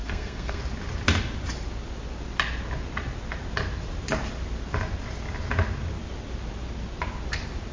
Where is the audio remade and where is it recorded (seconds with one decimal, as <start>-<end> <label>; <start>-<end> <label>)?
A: 0.0-0.6 remade; 0.6-7.7 recorded

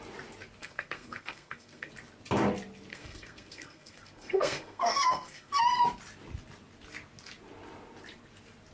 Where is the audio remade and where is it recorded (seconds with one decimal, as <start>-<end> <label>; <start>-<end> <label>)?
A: 0.0-0.6 recorded; 0.6-1.9 remade; 1.9-2.9 recorded; 2.9-5.6 remade; 5.6-8.7 recorded

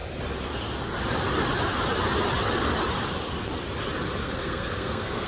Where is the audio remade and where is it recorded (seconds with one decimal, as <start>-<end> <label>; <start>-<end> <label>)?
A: 0.0-4.2 recorded; 4.2-5.3 remade

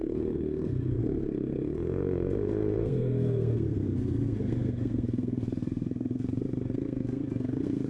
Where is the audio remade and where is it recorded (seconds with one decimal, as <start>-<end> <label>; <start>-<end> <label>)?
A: 0.0-7.9 remade

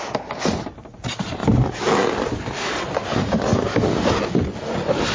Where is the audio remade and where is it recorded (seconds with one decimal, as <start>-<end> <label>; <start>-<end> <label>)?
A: 0.0-5.1 recorded

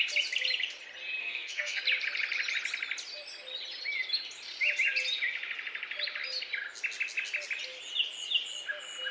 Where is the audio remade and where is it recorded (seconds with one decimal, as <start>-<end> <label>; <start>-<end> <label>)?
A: 0.0-1.2 recorded; 1.2-1.8 remade; 1.8-9.1 recorded